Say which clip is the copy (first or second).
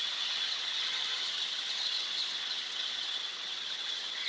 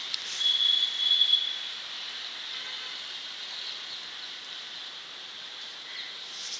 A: first